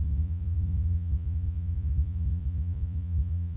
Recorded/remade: remade